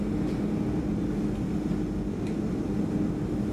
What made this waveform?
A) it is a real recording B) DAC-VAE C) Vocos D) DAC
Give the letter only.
A